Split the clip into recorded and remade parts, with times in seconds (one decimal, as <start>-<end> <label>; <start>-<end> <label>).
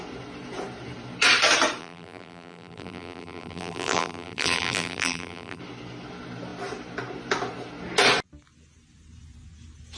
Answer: 0.0-1.8 recorded; 1.8-5.6 remade; 5.6-10.0 recorded